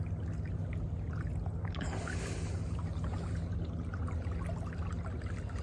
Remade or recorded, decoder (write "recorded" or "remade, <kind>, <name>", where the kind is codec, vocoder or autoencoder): recorded